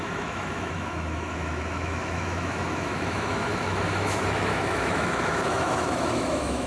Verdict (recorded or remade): remade